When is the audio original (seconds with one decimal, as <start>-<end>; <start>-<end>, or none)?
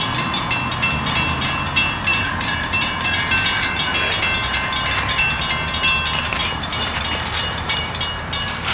0.0-2.1; 3.2-6.4; 8.0-8.7